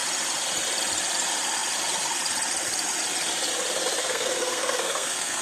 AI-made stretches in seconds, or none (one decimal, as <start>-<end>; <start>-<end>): 4.0-5.4